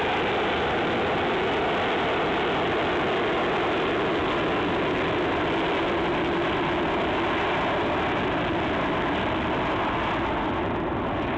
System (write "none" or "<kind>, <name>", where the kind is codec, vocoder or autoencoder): none